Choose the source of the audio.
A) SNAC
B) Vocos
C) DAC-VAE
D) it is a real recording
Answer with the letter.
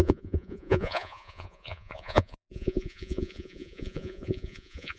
B